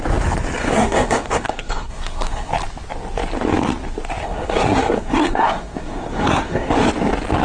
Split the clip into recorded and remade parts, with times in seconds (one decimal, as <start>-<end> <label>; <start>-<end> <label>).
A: 0.0-0.6 recorded; 0.6-2.5 remade; 2.5-4.2 recorded; 4.2-6.7 remade; 6.7-7.4 recorded